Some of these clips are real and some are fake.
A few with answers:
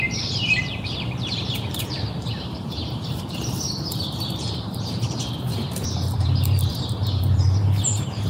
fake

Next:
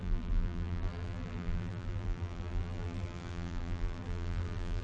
fake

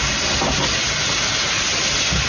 real